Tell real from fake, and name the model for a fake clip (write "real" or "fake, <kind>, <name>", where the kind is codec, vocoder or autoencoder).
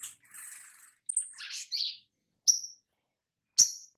real